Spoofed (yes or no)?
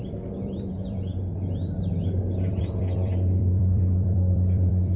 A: yes